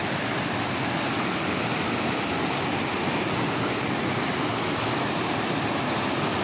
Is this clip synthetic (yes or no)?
no